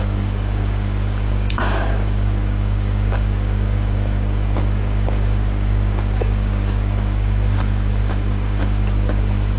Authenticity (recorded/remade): remade